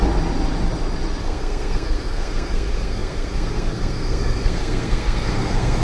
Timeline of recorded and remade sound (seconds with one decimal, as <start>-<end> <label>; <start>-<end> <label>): 0.0-1.2 recorded; 1.2-5.8 remade